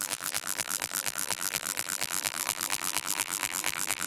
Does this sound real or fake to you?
fake